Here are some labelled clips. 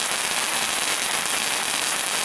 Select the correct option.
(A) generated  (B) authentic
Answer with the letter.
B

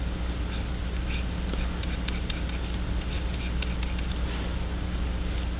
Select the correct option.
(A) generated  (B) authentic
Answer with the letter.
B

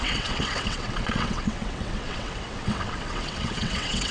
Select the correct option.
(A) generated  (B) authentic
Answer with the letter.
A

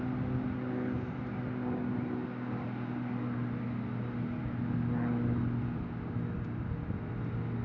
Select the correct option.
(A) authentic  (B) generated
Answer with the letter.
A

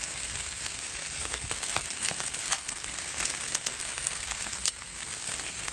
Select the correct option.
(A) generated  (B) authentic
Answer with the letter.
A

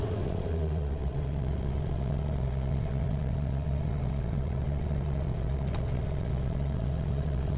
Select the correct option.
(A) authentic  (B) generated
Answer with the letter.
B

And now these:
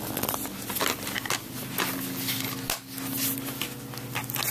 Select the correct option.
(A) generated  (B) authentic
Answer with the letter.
B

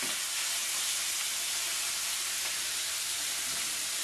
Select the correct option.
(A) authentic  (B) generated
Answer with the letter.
A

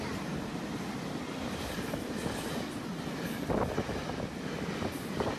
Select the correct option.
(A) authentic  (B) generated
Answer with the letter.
A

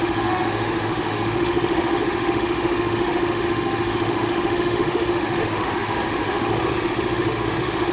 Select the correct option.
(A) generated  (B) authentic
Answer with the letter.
A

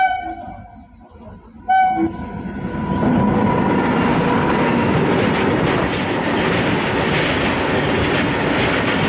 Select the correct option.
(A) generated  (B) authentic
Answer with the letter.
B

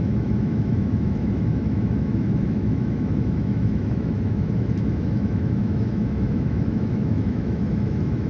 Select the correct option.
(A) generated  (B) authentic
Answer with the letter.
A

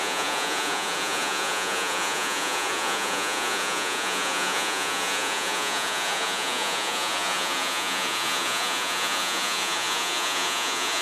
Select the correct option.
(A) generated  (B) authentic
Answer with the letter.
A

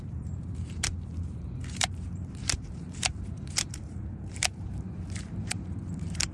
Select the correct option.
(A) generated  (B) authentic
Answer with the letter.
A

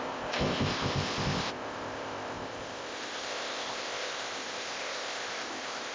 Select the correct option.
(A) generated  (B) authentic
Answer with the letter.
A